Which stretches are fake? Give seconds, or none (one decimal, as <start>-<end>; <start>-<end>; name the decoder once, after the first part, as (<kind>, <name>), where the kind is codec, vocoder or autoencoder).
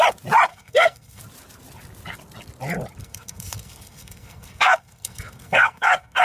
0.5-1.2 (codec, SNAC); 3.0-6.2